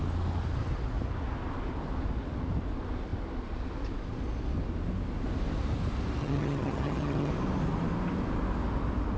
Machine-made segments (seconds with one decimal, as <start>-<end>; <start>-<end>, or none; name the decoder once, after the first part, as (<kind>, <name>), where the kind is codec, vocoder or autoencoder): 6.2-7.3 (vocoder, HiFi-GAN)